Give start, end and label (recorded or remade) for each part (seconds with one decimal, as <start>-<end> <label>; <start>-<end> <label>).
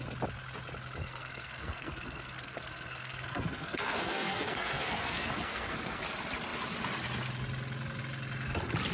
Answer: 0.0-1.0 recorded; 1.0-6.0 remade; 6.0-8.9 recorded